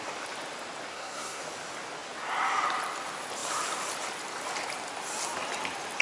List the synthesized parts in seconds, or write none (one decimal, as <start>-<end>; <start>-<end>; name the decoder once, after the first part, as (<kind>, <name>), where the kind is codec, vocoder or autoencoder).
0.9-1.4 (codec, SNAC)